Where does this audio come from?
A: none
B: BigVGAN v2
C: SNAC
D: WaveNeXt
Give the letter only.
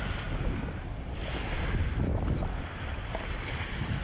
A